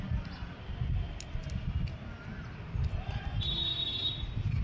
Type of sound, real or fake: real